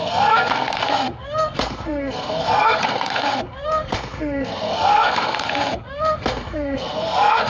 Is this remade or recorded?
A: remade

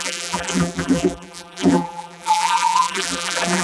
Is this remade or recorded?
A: remade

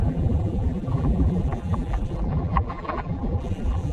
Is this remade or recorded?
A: remade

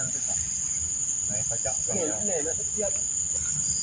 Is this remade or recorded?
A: recorded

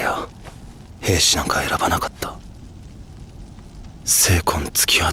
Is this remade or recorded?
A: recorded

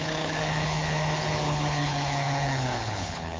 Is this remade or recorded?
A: remade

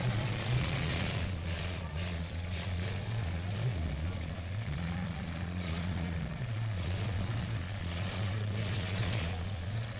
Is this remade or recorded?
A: remade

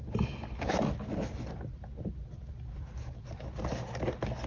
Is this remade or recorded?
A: recorded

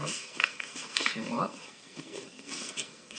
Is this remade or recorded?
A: remade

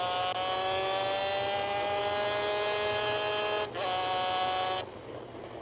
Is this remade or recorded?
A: recorded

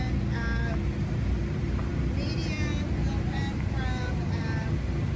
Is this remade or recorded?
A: recorded